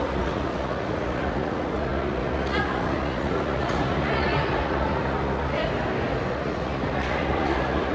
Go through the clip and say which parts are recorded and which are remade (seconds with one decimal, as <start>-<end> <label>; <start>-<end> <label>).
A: 0.0-5.6 remade; 5.6-6.3 recorded; 6.3-7.9 remade